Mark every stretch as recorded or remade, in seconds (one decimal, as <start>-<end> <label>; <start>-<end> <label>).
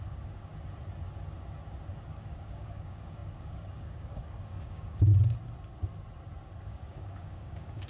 0.0-0.5 remade; 0.5-2.0 recorded; 2.0-5.1 remade; 5.1-6.6 recorded; 6.6-7.9 remade